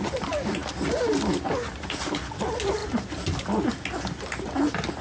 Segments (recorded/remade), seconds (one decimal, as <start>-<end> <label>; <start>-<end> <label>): 0.0-5.0 recorded